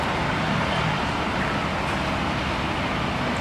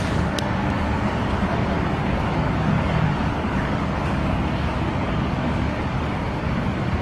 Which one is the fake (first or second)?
second